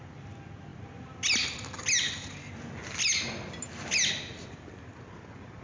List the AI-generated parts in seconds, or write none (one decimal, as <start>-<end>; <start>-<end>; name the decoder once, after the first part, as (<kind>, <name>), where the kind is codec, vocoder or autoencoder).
none